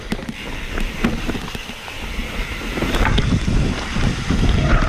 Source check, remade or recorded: recorded